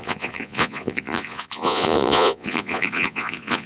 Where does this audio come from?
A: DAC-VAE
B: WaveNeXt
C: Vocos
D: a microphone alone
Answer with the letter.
C